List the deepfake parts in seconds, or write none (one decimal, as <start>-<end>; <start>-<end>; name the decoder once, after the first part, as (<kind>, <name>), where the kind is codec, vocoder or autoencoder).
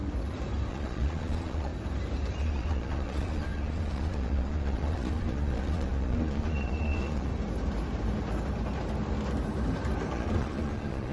0.7-1.7 (vocoder, Vocos); 2.4-7.3; 10.1-11.1